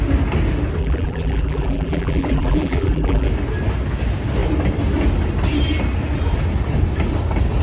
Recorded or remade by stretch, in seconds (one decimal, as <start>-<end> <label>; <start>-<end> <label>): 0.0-0.8 recorded; 0.8-3.3 remade; 3.3-7.6 recorded